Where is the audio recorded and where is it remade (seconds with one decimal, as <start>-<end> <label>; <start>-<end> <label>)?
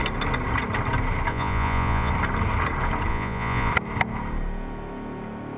0.0-1.3 recorded; 1.3-2.1 remade; 2.1-3.1 recorded; 3.1-3.7 remade; 3.7-5.6 recorded